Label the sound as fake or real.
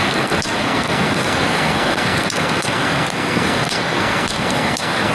fake